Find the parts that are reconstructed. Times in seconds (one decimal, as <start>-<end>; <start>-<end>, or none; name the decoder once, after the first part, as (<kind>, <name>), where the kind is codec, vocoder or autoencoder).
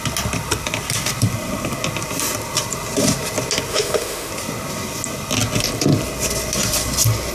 3.7-4.3 (autoencoder, DAC-VAE)